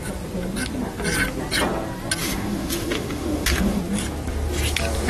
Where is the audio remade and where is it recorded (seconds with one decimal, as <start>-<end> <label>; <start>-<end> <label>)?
0.0-2.2 recorded; 2.2-3.8 remade; 3.8-5.1 recorded